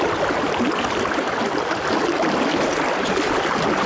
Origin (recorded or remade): recorded